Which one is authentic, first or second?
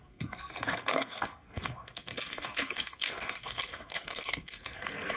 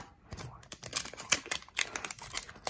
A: second